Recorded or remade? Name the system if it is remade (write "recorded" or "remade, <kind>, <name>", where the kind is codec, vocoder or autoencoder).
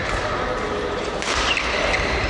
recorded